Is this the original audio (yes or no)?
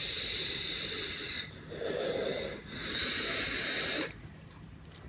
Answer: yes